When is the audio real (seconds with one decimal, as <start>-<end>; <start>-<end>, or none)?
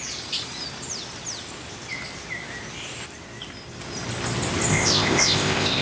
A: 0.0-4.7